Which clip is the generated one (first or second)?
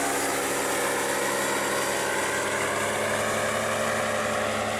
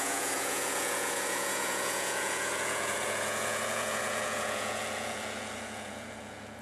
second